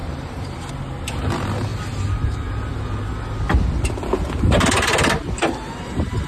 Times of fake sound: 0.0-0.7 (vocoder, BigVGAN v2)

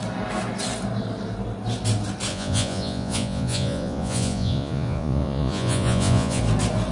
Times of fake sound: 2.3-6.4 (vocoder, Vocos)